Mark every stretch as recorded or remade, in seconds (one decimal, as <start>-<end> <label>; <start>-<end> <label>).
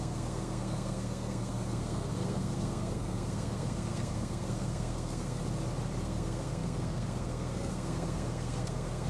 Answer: 0.0-5.4 remade; 5.4-6.0 recorded; 6.0-9.1 remade